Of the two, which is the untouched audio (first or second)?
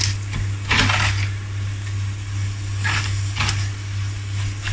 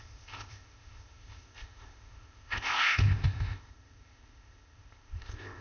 first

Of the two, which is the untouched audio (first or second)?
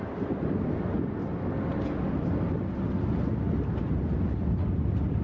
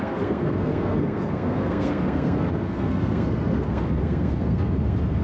first